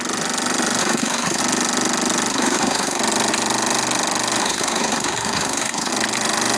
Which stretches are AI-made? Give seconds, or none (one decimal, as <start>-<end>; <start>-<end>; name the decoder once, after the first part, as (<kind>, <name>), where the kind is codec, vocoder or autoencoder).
0.8-1.4 (codec, SNAC); 2.3-3.0; 4.4-5.9